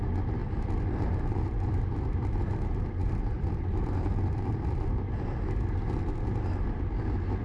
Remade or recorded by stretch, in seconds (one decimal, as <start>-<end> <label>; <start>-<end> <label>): 0.0-0.4 recorded; 0.4-4.8 remade; 4.8-7.4 recorded